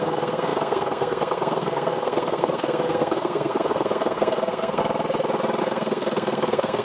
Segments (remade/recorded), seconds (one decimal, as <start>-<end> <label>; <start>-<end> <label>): 0.0-4.8 remade; 4.8-5.6 recorded; 5.6-6.8 remade